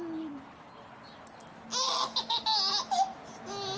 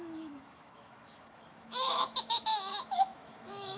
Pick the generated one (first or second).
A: second